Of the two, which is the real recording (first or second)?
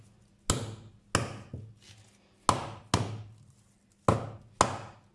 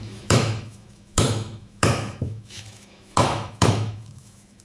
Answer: first